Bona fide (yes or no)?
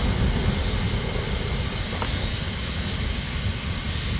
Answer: yes